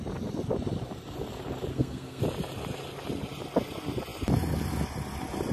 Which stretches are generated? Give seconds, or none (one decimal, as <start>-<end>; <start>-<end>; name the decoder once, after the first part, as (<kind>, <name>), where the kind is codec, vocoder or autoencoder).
1.7-2.2 (codec, SNAC)